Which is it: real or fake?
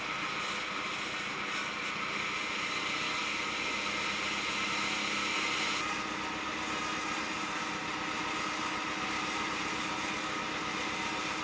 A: real